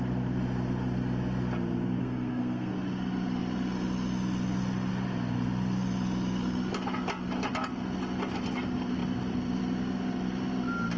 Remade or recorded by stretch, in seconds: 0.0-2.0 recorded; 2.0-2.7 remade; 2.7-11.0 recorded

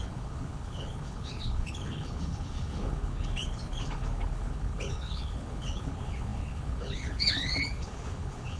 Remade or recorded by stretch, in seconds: 0.0-8.6 remade

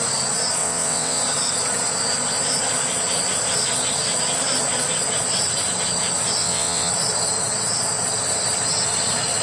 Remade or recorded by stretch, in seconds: 0.0-0.6 recorded; 0.6-1.2 remade; 1.2-6.4 recorded; 6.4-6.9 remade; 6.9-9.4 recorded

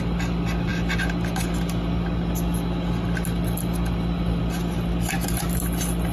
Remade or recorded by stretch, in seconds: 0.0-6.1 recorded

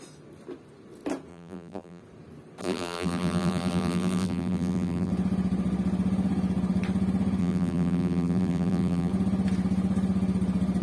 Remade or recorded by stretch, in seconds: 0.0-1.3 recorded; 1.3-2.0 remade; 2.0-2.6 recorded; 2.6-5.1 remade; 5.1-7.4 recorded; 7.4-9.1 remade; 9.1-10.8 recorded

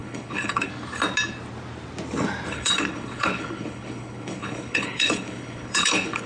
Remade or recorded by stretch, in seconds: 0.0-0.7 remade; 0.7-2.5 recorded; 2.5-6.3 remade